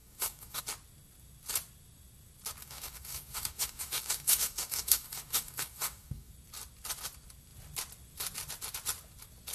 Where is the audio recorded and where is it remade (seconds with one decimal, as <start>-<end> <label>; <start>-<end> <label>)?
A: 0.0-0.6 remade; 0.6-2.6 recorded; 2.6-6.3 remade; 6.3-9.5 recorded